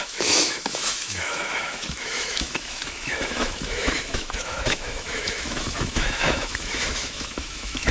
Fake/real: fake